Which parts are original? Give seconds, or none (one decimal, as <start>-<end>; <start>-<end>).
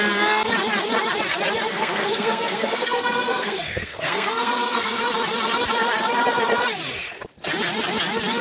0.0-1.7; 5.0-8.4